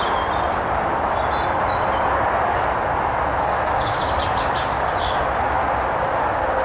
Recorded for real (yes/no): yes